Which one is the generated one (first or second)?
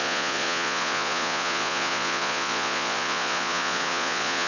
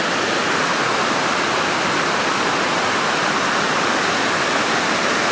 first